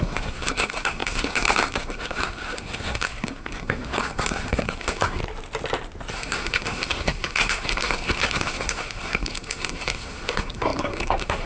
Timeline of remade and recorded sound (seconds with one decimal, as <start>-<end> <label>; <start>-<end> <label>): 0.0-5.2 remade; 5.2-6.1 recorded; 6.1-11.5 remade